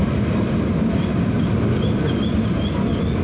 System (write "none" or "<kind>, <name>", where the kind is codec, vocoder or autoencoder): none